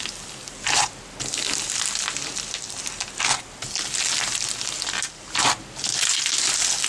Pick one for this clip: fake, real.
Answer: real